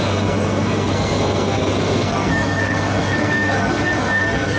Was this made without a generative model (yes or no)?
no